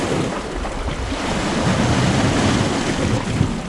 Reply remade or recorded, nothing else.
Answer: recorded